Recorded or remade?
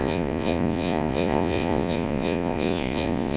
remade